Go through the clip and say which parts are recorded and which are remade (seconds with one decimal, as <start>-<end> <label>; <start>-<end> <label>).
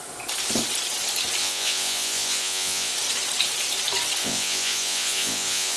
0.0-1.4 recorded; 1.4-2.9 remade; 2.9-4.2 recorded; 4.2-5.8 remade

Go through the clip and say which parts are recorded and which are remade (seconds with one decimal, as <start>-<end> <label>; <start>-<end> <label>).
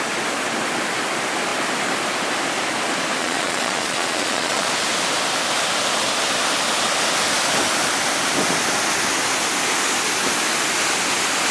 0.0-3.2 recorded; 3.2-4.7 remade; 4.7-11.5 recorded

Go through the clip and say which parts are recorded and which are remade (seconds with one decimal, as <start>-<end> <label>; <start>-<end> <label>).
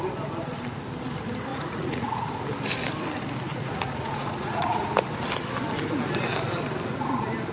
0.0-1.5 recorded; 1.5-2.2 remade; 2.2-3.5 recorded; 3.5-4.9 remade; 4.9-7.5 recorded